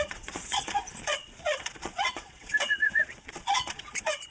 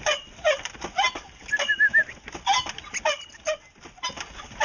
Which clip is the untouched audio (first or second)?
second